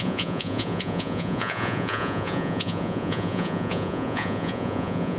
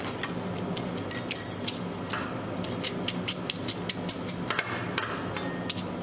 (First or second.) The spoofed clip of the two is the first